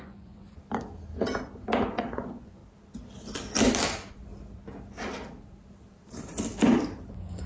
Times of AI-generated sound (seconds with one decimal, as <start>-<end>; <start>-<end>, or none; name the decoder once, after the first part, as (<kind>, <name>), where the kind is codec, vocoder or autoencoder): 0.0-0.6 (vocoder, Vocos); 1.9-2.6; 7.1-7.5